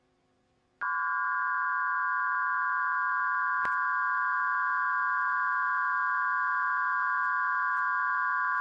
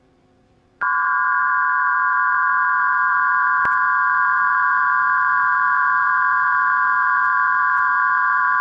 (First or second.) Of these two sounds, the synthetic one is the second